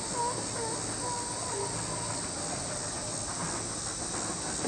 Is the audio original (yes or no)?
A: yes